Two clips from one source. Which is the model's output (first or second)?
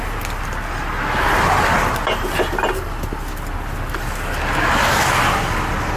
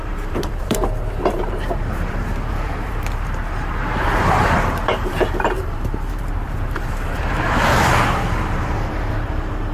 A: second